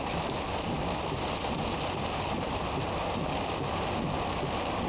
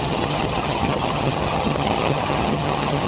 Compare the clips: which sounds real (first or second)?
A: first